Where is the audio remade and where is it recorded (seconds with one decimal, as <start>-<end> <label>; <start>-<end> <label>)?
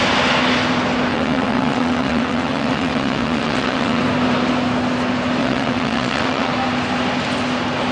0.0-1.1 recorded; 1.1-4.0 remade; 4.0-5.4 recorded; 5.4-6.5 remade; 6.5-7.9 recorded